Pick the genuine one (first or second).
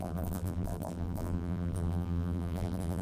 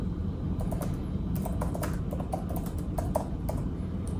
second